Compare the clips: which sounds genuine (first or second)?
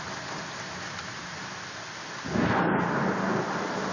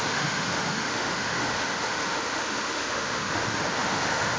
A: first